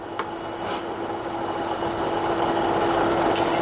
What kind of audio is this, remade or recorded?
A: recorded